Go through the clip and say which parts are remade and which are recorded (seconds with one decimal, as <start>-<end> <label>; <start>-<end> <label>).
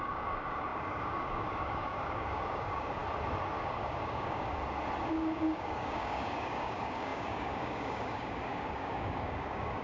0.0-3.0 remade; 3.0-3.6 recorded; 3.6-4.6 remade; 4.6-5.1 recorded; 5.1-9.8 remade